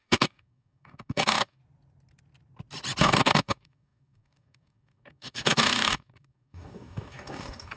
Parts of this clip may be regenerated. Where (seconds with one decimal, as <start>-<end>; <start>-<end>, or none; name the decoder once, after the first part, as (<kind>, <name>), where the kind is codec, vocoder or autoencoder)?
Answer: 0.0-1.6 (codec, DAC); 3.0-7.8